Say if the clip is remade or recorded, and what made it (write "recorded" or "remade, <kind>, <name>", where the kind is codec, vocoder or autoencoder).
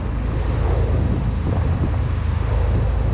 recorded